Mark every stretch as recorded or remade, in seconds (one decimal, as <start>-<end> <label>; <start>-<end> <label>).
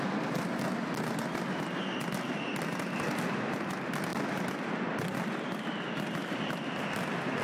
0.0-4.1 recorded; 4.1-5.6 remade; 5.6-7.4 recorded